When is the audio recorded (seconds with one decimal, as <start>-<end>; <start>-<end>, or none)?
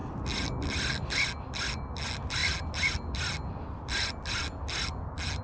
0.0-5.4